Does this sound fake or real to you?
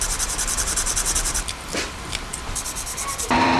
fake